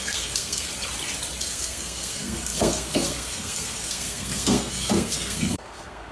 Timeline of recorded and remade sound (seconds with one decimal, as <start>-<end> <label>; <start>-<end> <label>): 0.0-0.7 remade; 0.7-1.4 recorded; 1.4-6.1 remade